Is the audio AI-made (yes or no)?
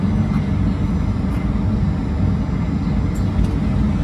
no